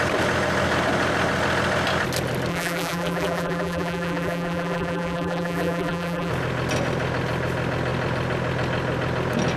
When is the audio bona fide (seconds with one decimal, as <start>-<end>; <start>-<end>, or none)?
0.0-2.5; 6.3-9.6

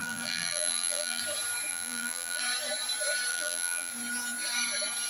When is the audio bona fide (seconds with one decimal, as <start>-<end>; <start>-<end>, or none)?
1.2-1.7; 2.4-3.3; 3.9-5.1

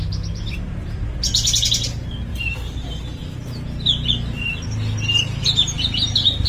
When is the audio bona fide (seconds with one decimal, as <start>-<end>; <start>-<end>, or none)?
0.0-2.3; 3.0-5.4

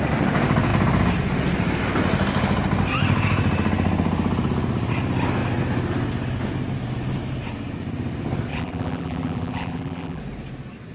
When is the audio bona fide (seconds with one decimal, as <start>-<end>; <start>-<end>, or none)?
0.0-8.5; 10.2-10.9

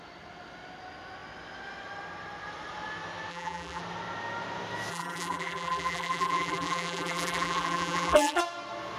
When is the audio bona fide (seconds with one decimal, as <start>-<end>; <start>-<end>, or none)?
0.0-3.3; 3.8-4.9; 8.4-9.0

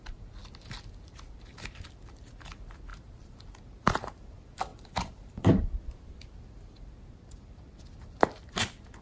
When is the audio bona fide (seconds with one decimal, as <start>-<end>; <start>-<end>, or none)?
0.0-2.9; 4.3-4.7; 5.6-9.0

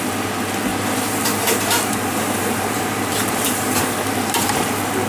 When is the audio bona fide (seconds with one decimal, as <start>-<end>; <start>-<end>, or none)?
0.0-0.7; 3.8-5.1